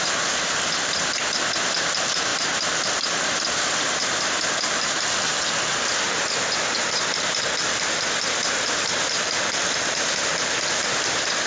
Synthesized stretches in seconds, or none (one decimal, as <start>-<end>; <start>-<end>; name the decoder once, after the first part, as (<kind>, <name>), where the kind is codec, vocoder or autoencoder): none